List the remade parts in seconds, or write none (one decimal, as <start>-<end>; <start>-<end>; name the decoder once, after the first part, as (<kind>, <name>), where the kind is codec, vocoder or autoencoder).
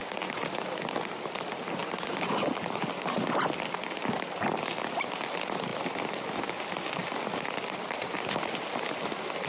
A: 5.7-6.4 (vocoder, BigVGAN v2); 7.0-8.1